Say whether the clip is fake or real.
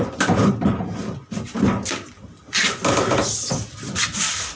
real